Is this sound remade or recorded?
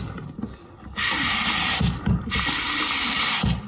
recorded